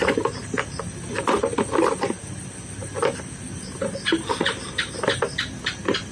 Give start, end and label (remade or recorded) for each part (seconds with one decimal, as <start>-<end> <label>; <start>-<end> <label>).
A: 0.0-6.1 recorded